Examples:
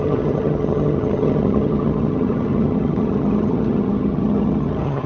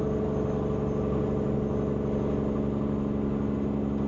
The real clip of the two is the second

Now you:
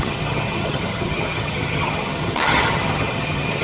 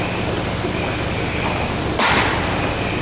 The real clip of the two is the second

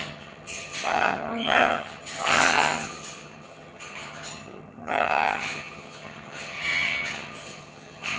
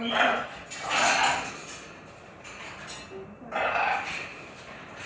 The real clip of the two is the second